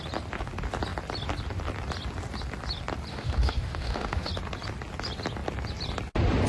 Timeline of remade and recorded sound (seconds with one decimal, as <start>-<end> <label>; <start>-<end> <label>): 0.0-3.1 recorded; 3.1-4.3 remade; 4.3-6.5 recorded